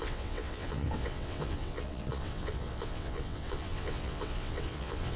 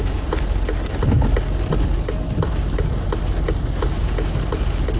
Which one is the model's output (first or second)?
first